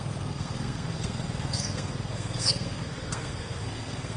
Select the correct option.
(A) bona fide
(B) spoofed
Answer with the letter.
B